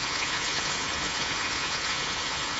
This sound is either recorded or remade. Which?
remade